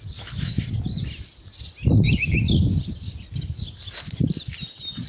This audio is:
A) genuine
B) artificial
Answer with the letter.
A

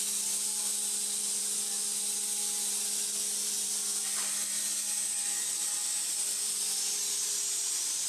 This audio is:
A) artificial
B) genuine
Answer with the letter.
B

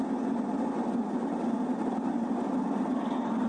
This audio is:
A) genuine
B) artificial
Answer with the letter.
A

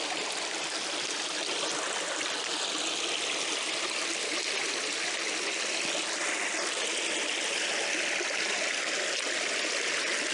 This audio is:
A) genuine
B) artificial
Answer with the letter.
A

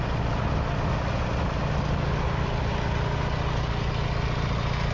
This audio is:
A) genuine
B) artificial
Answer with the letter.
A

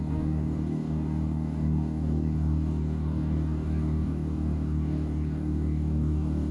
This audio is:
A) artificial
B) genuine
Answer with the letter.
A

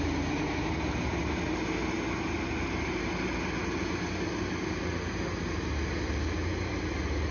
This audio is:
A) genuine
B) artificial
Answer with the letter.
A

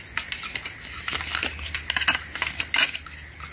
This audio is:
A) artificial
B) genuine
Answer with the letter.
B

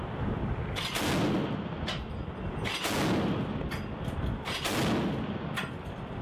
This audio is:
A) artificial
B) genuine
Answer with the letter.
B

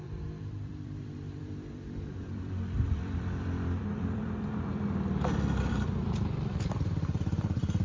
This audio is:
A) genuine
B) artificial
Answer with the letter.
B